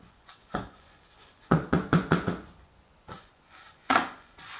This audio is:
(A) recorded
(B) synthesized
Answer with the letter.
B